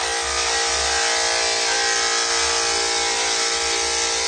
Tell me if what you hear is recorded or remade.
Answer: recorded